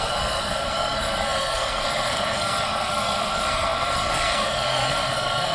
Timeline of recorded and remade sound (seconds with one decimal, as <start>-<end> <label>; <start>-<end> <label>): 0.0-5.5 remade